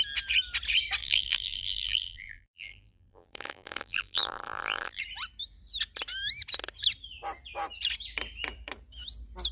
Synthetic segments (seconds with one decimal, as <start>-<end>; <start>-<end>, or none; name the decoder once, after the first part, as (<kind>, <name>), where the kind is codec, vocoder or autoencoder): 1.0-5.0 (vocoder, BigVGAN v2)